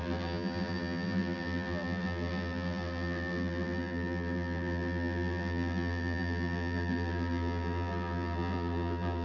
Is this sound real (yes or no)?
no